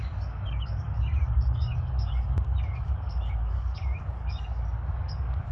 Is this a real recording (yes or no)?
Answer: no